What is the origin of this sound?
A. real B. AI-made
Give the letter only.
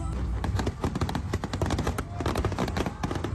A